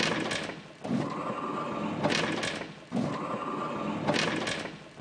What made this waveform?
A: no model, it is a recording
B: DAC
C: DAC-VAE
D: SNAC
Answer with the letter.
A